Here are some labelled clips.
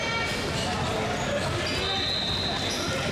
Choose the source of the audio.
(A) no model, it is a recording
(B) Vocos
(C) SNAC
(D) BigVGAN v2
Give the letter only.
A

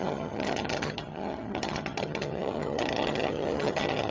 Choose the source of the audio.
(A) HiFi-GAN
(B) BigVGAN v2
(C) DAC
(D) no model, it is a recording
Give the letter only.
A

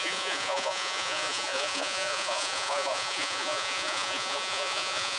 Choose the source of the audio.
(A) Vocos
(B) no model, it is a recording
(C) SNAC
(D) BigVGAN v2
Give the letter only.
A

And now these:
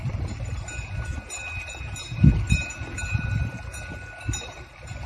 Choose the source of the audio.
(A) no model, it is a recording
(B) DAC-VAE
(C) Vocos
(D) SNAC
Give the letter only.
A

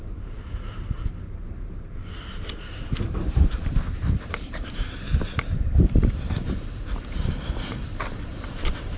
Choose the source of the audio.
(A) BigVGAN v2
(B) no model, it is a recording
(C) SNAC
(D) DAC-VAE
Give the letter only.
A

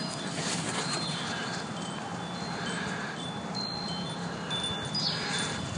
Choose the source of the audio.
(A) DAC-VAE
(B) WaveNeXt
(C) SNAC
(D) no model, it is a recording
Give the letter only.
D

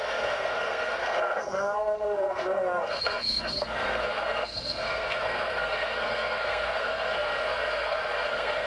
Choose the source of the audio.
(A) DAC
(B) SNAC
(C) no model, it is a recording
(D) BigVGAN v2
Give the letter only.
B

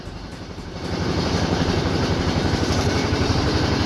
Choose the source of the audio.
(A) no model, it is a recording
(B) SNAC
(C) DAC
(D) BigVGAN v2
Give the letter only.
D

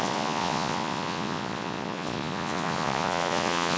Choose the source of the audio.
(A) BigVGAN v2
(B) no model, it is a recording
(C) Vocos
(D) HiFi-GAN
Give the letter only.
C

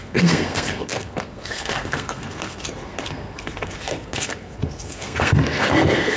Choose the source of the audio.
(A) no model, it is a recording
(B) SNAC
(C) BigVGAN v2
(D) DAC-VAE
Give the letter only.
B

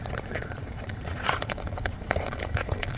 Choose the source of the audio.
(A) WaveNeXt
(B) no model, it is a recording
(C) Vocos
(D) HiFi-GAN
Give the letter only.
C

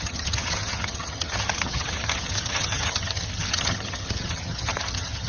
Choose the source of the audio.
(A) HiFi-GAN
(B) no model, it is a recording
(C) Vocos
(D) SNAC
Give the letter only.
A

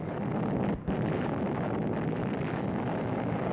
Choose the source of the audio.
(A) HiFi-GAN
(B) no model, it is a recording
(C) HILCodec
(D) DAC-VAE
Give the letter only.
B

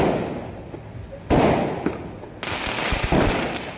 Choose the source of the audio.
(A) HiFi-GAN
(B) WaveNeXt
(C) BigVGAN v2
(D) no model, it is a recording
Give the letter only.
D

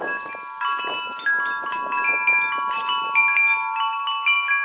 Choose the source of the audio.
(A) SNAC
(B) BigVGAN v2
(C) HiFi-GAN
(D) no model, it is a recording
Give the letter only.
D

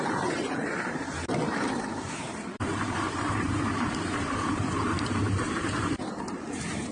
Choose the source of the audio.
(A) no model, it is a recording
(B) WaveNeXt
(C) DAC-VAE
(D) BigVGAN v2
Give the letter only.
D